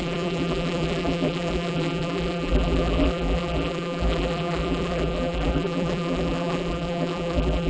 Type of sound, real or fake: fake